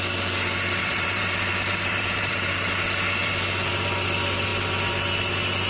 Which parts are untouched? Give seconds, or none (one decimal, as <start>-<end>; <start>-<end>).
0.0-0.8; 2.7-3.2; 3.7-5.7